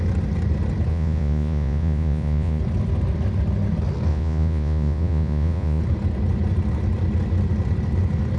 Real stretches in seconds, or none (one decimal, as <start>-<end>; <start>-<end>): 0.0-0.9; 2.6-4.1; 5.8-8.4